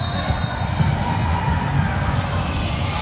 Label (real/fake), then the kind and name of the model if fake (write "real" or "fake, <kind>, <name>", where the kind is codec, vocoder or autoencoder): fake, vocoder, Vocos